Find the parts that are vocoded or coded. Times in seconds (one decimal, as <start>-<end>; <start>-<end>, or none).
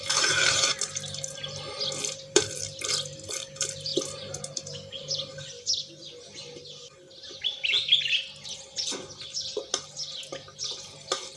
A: 0.0-3.9; 5.0-6.0; 8.2-11.4